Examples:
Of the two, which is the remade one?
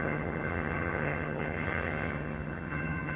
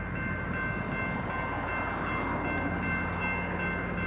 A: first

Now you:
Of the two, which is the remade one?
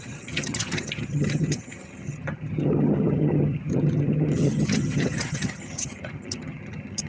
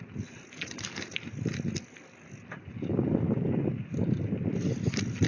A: first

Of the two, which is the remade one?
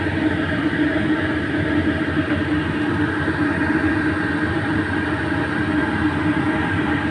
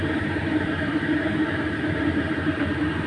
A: second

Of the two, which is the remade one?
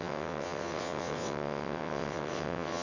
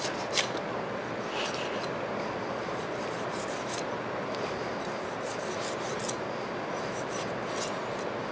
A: first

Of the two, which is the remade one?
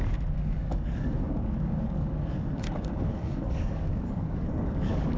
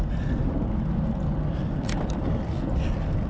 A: first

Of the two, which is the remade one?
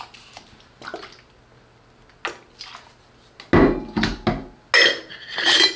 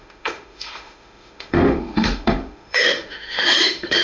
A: second